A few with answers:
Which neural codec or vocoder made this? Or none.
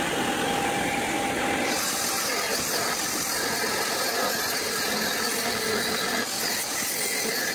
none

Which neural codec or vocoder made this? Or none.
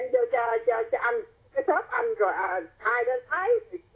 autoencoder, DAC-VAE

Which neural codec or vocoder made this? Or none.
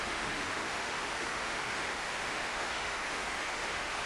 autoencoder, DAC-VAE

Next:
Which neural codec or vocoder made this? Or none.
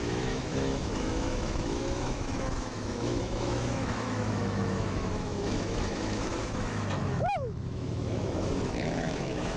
autoencoder, DAC-VAE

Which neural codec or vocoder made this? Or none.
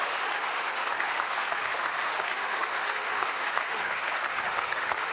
autoencoder, DAC-VAE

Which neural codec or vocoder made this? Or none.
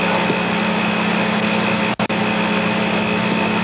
none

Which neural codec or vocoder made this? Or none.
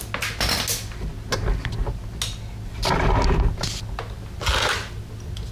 none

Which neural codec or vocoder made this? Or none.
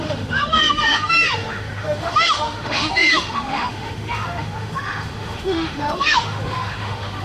autoencoder, DAC-VAE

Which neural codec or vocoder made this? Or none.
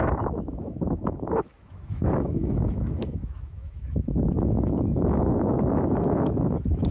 autoencoder, DAC-VAE